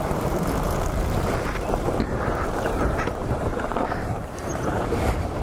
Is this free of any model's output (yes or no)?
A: no